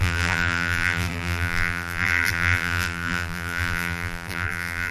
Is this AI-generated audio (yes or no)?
yes